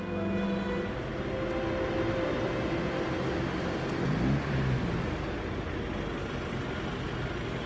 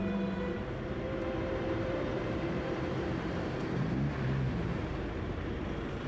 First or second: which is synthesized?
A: second